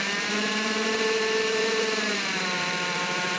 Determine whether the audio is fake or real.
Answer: fake